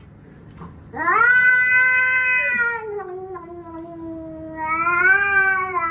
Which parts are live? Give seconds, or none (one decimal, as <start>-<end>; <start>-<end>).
1.5-5.0